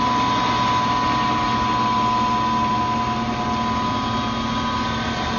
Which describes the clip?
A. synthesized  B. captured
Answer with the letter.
B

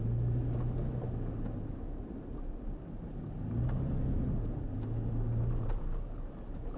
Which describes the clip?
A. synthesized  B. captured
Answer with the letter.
B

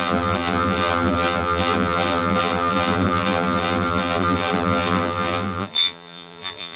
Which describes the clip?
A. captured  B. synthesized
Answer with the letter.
B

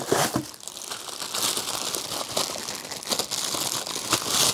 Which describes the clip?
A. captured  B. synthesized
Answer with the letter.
A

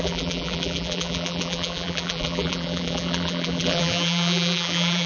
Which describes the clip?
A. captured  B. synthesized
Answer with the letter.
B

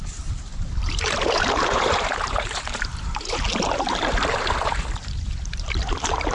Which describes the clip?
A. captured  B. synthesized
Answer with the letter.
B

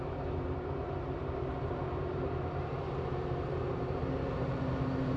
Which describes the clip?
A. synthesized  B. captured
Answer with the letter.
A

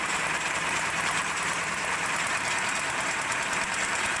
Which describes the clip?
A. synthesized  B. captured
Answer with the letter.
A